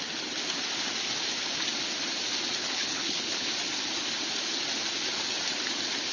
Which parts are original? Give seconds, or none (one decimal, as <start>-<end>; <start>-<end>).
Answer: 0.0-2.6; 3.5-6.1